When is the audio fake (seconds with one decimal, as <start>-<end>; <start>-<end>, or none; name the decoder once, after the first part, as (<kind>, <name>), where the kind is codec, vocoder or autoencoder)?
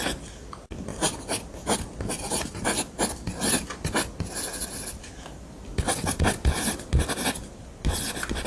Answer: none